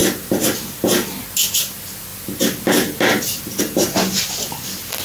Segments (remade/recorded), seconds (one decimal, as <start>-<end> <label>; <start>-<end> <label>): 0.0-5.0 recorded